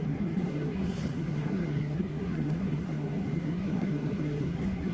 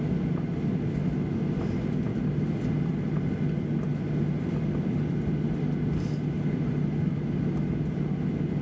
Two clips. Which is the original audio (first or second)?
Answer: second